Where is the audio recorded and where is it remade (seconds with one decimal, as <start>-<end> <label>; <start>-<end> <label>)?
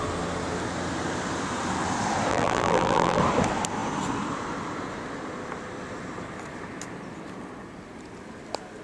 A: 0.0-2.3 recorded; 2.3-3.2 remade; 3.2-8.8 recorded